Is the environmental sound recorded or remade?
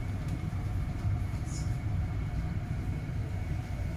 remade